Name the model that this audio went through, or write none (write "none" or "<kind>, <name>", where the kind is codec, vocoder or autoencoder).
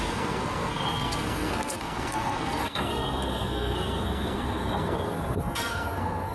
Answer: codec, SNAC